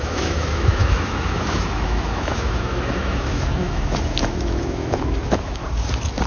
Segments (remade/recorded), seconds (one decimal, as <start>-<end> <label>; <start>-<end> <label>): 0.0-5.6 remade; 5.6-6.3 recorded